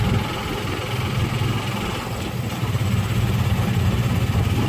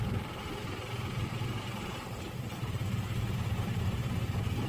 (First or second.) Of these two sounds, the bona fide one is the first